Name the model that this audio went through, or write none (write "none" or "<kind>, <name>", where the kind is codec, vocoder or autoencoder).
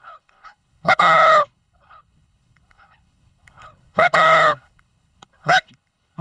codec, HILCodec